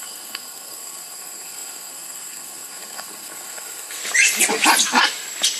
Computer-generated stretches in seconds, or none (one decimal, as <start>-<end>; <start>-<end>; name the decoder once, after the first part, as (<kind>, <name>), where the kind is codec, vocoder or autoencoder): 0.0-4.0 (codec, SNAC)

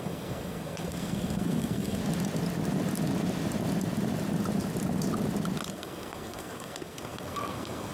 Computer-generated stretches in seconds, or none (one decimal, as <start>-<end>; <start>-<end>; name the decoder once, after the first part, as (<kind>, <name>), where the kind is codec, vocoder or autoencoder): 0.0-2.0 (codec, SNAC); 5.7-7.9

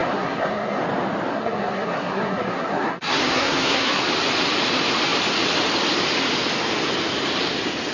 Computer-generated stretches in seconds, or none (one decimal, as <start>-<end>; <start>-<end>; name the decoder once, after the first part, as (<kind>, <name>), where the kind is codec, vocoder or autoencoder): 0.0-0.8 (codec, SNAC); 1.3-4.0

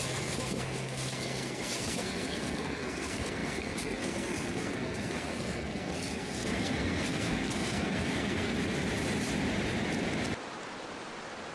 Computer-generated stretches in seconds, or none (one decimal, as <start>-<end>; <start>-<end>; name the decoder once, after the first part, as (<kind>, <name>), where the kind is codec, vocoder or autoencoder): 0.0-8.5 (codec, SNAC)

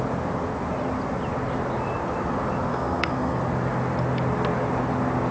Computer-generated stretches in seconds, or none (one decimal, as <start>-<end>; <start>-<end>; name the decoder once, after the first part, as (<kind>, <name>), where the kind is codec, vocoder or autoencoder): 2.7-3.4 (codec, SNAC)

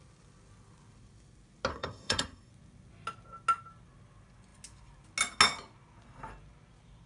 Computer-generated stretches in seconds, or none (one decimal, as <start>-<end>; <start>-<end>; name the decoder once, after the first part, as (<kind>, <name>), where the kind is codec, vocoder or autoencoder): 1.7-2.5 (codec, SNAC)

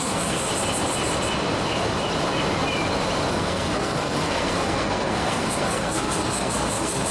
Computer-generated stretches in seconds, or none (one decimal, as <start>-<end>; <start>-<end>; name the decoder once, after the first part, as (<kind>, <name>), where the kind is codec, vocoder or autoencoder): 0.0-0.5 (codec, SNAC); 3.3-7.1